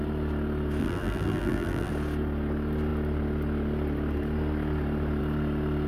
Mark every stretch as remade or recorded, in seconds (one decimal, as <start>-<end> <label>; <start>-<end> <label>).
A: 0.0-0.8 recorded; 0.8-1.9 remade; 1.9-5.9 recorded